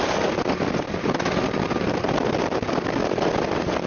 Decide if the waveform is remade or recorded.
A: recorded